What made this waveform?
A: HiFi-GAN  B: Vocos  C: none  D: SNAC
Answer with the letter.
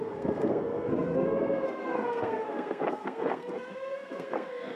D